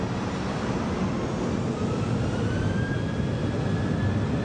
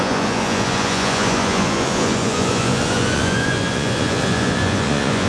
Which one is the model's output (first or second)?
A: second